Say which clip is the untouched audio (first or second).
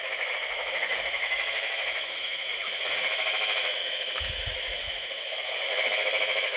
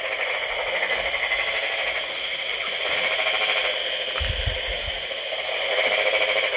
second